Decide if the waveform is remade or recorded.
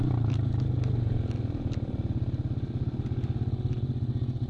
recorded